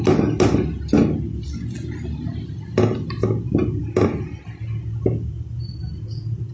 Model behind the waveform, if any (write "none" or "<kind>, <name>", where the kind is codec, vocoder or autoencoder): none